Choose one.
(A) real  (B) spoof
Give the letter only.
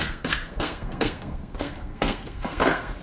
B